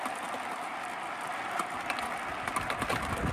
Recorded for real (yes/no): yes